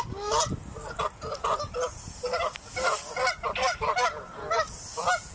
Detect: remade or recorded recorded